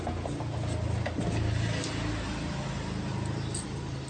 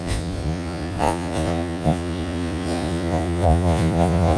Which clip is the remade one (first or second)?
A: second